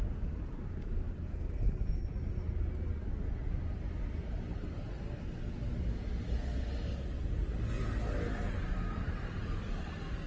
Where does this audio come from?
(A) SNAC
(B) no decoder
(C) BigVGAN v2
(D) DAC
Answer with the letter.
B